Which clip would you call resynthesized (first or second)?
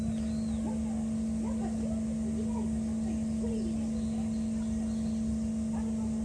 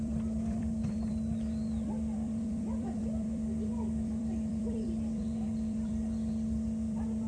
second